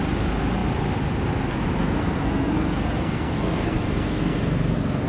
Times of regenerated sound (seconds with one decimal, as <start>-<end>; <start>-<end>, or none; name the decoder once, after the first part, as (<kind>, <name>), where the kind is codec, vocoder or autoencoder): 1.8-5.1 (codec, SNAC)